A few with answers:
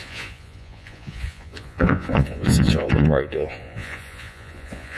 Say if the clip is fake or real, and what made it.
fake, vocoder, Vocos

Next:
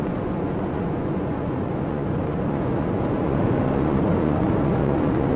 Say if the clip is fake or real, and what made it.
fake, vocoder, Vocos